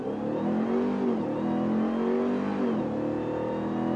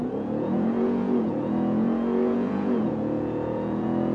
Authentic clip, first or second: first